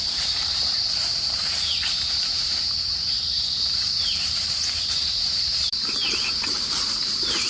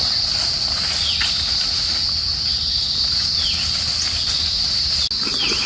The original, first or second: second